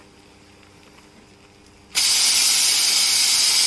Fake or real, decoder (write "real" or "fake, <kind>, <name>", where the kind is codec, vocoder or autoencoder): real